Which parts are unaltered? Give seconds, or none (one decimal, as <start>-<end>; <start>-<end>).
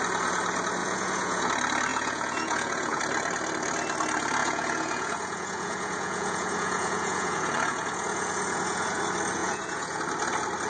0.0-0.8; 1.5-1.9; 3.0-4.4; 9.0-9.4; 10.0-10.7